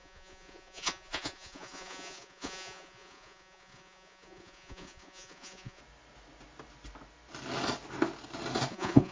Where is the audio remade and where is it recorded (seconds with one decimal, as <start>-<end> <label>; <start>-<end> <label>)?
0.0-5.8 remade; 5.8-8.7 recorded; 8.7-9.1 remade